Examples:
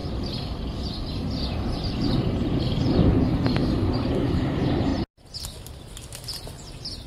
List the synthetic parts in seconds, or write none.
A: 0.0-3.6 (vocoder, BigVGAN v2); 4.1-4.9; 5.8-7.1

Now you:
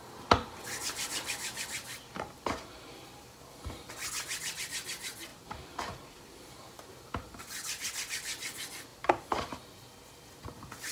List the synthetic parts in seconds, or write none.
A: 0.8-3.0 (vocoder, BigVGAN v2); 5.3-6.2; 8.9-9.6

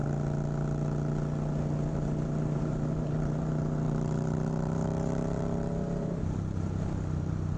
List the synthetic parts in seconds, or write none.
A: 1.9-7.6 (vocoder, BigVGAN v2)

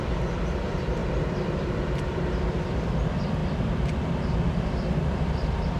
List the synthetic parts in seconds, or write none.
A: 0.0-5.8 (vocoder, BigVGAN v2)

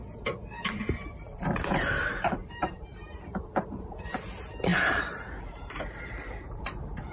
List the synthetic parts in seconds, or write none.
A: 0.8-7.1 (vocoder, BigVGAN v2)

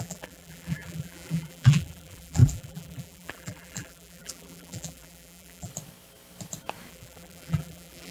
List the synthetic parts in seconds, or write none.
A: 0.0-5.7 (vocoder, BigVGAN v2); 6.9-8.1

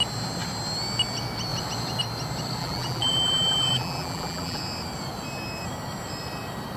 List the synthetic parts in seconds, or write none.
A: 2.6-4.6 (vocoder, BigVGAN v2)

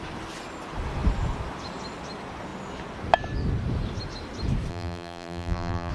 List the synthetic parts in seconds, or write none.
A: 4.7-5.9 (vocoder, BigVGAN v2)